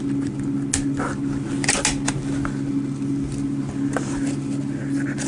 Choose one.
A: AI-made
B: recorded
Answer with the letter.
B